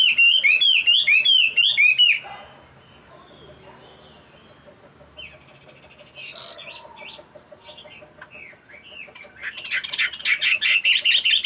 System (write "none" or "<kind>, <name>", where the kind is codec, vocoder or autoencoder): none